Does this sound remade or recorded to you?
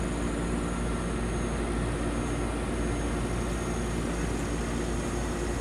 recorded